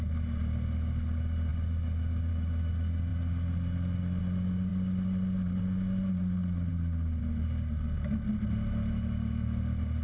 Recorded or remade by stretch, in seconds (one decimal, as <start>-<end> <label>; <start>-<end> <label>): 0.0-10.0 recorded